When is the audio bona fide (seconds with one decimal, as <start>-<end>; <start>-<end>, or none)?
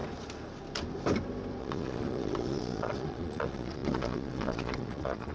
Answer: 0.0-1.6